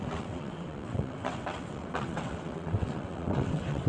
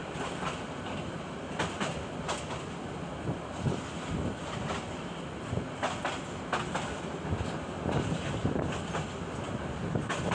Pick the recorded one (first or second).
second